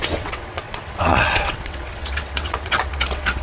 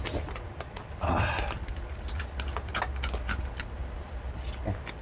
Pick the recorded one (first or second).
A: second